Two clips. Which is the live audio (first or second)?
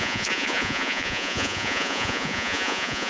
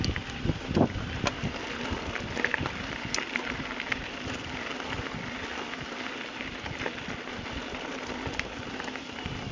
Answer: second